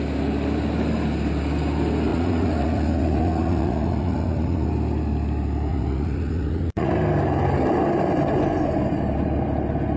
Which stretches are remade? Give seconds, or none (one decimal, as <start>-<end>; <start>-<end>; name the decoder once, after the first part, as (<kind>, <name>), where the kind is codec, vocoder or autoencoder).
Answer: 2.1-4.7 (vocoder, Vocos); 5.7-6.9